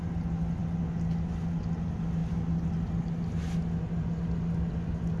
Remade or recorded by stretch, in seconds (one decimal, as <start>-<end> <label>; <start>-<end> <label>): 0.0-5.2 recorded